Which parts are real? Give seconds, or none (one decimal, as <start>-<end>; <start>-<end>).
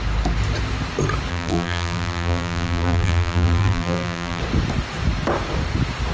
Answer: 0.0-1.3; 4.4-6.1